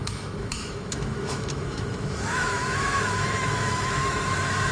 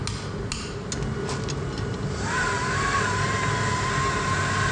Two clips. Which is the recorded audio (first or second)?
second